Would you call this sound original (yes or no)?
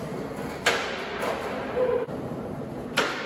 yes